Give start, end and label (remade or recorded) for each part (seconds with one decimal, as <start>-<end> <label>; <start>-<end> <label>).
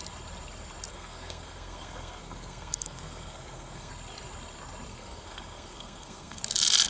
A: 0.0-0.9 recorded; 0.9-3.9 remade; 3.9-4.9 recorded; 4.9-6.4 remade; 6.4-6.9 recorded